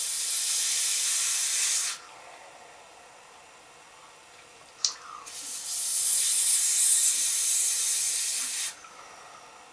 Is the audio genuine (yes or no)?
yes